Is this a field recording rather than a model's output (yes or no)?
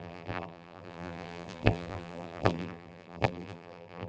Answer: no